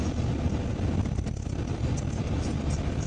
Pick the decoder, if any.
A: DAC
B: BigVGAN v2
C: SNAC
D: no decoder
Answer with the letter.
D